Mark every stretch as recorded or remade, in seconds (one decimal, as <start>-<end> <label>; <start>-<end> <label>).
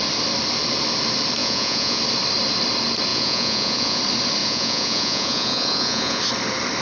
0.0-1.4 recorded; 1.4-2.0 remade; 2.0-3.1 recorded; 3.1-4.0 remade; 4.0-4.4 recorded; 4.4-6.2 remade; 6.2-6.8 recorded